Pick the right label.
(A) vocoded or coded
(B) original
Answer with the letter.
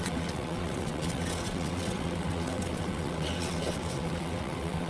A